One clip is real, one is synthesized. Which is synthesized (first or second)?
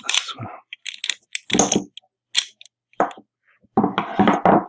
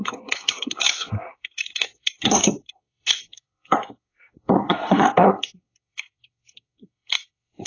second